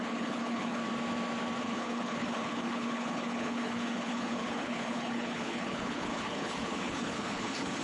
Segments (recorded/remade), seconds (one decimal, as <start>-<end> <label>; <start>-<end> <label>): 0.0-0.8 remade; 0.8-1.6 recorded; 1.6-7.8 remade